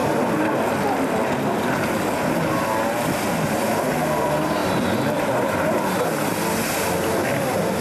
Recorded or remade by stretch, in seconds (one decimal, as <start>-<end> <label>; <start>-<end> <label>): 0.0-7.8 recorded